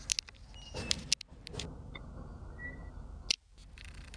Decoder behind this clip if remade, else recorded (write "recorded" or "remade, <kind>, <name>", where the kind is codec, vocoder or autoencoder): recorded